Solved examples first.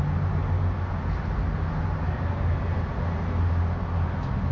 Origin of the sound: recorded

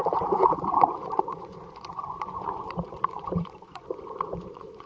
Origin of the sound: remade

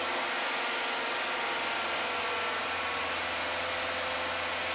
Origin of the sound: recorded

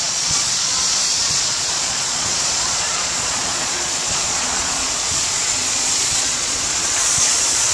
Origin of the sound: remade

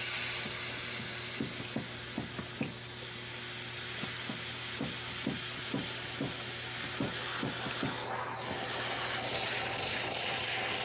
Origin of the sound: recorded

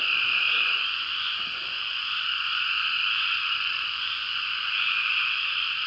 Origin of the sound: remade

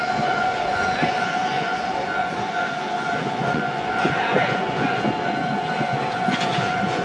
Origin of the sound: remade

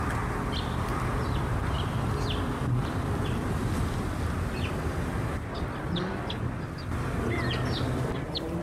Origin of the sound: recorded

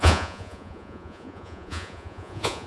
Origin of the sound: remade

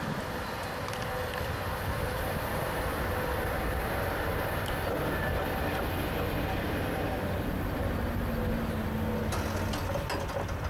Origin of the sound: recorded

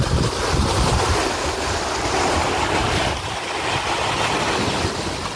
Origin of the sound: recorded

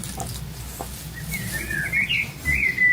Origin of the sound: recorded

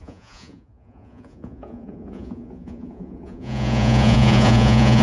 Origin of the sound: remade